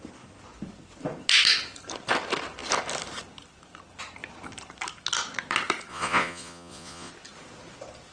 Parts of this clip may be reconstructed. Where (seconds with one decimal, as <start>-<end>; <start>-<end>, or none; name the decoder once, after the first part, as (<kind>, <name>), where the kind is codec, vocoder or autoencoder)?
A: 5.9-7.1 (vocoder, Vocos)